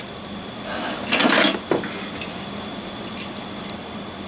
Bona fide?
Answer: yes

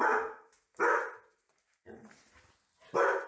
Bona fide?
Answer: yes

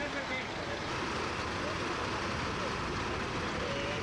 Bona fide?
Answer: yes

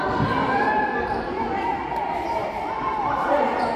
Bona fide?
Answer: yes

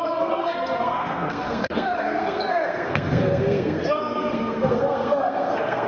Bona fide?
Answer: no